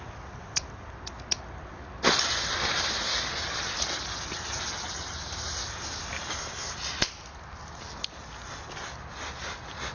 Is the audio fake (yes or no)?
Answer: no